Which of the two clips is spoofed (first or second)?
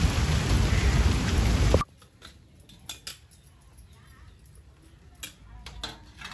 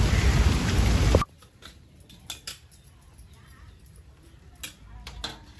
second